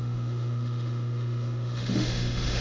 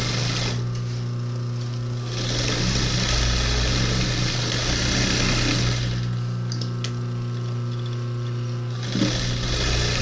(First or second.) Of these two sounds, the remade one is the first